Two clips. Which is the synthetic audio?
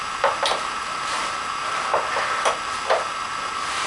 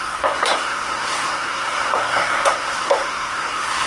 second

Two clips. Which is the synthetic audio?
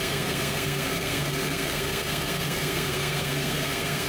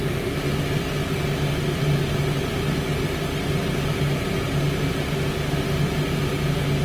first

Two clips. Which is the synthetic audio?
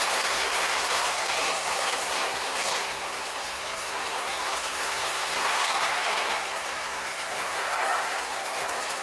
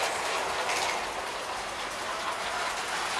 first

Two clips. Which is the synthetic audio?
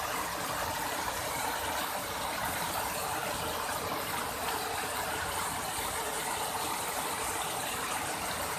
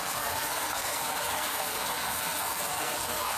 second